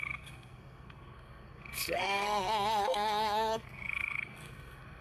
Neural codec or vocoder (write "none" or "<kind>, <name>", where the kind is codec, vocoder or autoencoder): codec, SNAC